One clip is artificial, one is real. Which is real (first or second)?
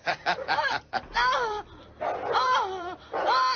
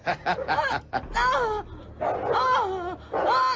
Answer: second